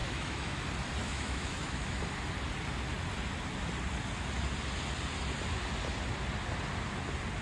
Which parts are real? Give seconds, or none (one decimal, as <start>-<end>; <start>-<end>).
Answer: 0.6-1.0; 2.0-7.4